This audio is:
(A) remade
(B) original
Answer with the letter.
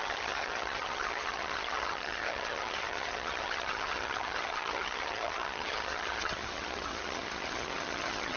A